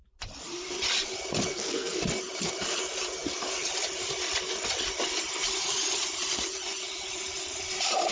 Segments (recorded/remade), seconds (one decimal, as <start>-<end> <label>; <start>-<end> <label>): 0.0-1.5 recorded; 1.5-2.0 remade; 2.0-8.1 recorded

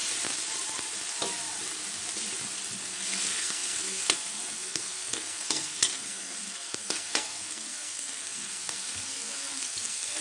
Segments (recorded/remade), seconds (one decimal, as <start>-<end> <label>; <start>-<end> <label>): 0.0-2.8 recorded; 2.8-10.2 remade